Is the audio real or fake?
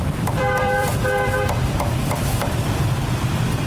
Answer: fake